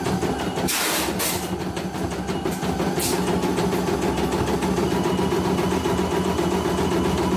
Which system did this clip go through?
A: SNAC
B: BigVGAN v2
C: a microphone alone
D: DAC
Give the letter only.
C